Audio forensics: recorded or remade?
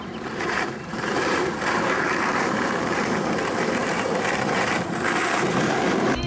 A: remade